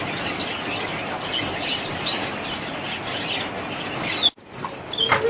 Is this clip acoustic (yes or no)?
yes